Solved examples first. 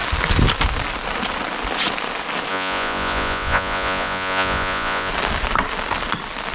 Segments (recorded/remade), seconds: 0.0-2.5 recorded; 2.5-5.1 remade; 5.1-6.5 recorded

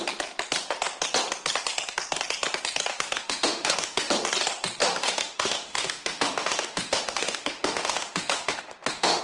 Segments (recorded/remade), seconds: 0.0-2.9 recorded; 2.9-4.1 remade; 4.1-4.8 recorded; 4.8-9.2 remade

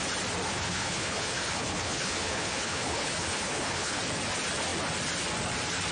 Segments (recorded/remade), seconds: 0.0-0.5 recorded; 0.5-4.0 remade; 4.0-5.9 recorded

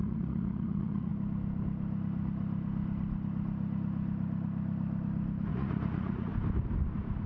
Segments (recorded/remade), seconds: 0.0-1.1 remade; 1.1-5.5 recorded; 5.5-6.3 remade; 6.3-7.3 recorded

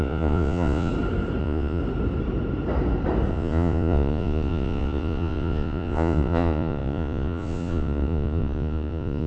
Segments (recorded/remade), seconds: 0.0-0.9 remade; 0.9-1.4 recorded; 1.4-1.8 remade; 1.8-3.3 recorded; 3.3-9.3 remade

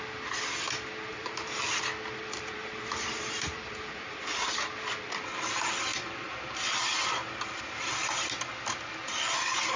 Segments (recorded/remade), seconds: 0.0-1.1 recorded; 1.1-1.8 remade; 1.8-2.2 recorded; 2.2-4.2 remade; 4.2-5.9 recorded; 5.9-6.5 remade; 6.5-9.8 recorded